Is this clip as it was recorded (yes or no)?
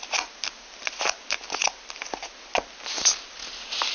yes